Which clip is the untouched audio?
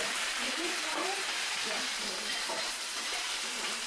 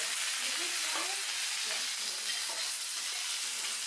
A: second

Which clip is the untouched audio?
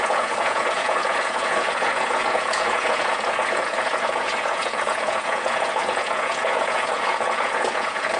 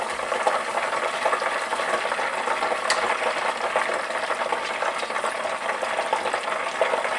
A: second